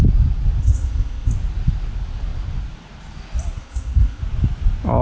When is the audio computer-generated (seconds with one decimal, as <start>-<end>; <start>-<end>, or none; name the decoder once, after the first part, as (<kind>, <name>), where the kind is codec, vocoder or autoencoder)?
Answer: 0.6-1.3 (codec, ZipCodec); 3.6-4.2

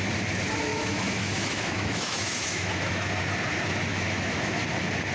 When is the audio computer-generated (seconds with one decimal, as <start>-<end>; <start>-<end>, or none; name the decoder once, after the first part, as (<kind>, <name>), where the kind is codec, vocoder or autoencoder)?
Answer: 0.7-3.1 (autoencoder, DAC-VAE); 3.9-4.5